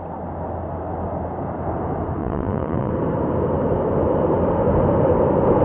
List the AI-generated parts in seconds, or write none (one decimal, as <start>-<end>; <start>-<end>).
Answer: 2.2-2.9